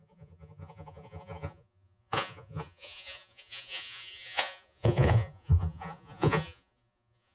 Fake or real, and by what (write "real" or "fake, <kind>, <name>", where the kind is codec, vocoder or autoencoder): fake, vocoder, Vocos